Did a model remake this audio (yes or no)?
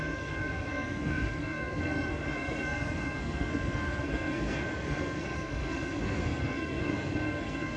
yes